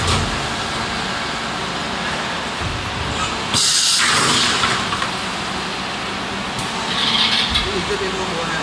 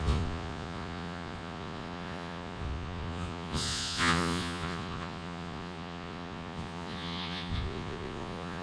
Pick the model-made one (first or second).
second